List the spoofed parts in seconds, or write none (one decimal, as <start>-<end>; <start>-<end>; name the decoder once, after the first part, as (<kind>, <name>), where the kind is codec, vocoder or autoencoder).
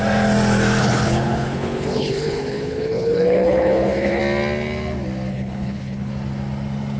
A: 0.8-4.2 (codec, HILCodec); 5.3-6.1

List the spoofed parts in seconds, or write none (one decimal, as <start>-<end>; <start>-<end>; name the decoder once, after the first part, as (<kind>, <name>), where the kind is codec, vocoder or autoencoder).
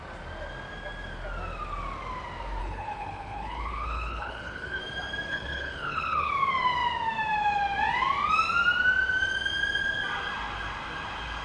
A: 2.6-4.8 (codec, HILCodec); 5.3-6.3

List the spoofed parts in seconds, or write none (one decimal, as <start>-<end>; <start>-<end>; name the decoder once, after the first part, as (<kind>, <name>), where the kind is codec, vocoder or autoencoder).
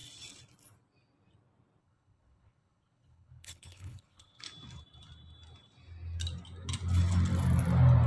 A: 1.8-4.4 (codec, HILCodec)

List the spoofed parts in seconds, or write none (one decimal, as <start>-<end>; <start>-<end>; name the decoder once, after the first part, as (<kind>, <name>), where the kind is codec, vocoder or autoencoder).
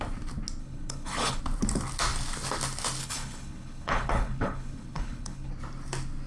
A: 0.6-1.4 (codec, HILCodec); 3.0-5.5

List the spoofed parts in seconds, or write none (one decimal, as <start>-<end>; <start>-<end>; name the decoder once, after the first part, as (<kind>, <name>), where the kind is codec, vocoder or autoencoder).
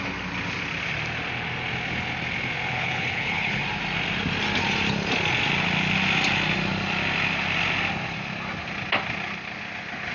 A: 2.7-3.6 (codec, HILCodec)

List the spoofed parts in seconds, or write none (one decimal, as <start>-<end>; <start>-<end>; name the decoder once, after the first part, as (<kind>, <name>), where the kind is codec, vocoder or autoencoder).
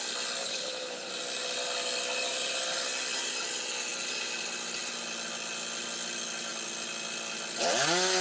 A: 0.4-1.1 (codec, HILCodec)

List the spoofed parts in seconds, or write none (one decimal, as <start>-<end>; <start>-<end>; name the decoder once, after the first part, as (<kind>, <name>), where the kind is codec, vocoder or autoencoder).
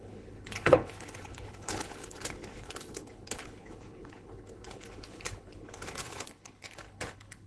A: 0.0-7.5 (codec, HILCodec)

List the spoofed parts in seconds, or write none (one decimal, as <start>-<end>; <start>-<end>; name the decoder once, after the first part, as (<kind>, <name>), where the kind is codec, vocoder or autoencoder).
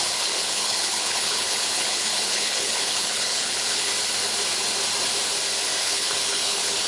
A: 0.0-3.9 (codec, HILCodec); 5.8-6.9